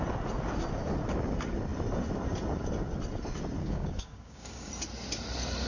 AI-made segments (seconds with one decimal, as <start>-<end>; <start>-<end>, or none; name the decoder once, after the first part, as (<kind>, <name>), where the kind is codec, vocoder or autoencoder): 3.6-4.7 (codec, DAC)